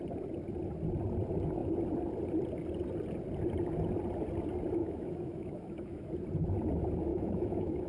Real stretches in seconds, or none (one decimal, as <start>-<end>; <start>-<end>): 0.0-4.8; 6.1-7.1